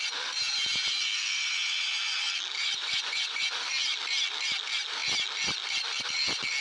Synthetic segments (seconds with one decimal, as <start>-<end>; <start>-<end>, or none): 2.6-3.7